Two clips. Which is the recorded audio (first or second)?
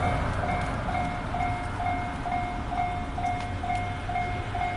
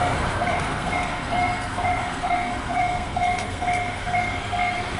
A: first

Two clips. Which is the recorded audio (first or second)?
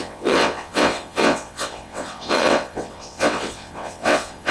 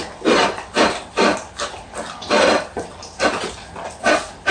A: second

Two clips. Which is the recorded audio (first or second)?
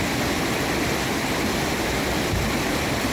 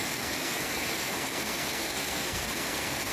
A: first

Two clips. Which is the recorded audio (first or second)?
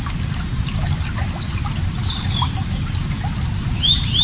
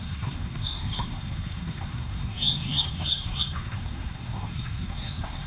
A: first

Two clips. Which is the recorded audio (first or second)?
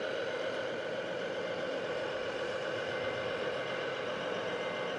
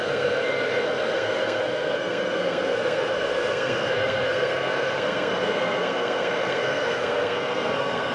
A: first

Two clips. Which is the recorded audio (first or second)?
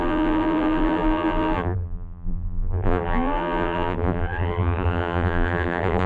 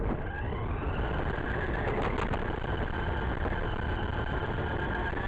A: second